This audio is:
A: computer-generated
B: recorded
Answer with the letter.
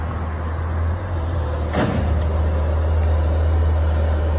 B